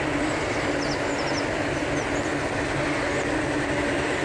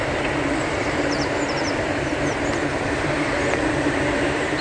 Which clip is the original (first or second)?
first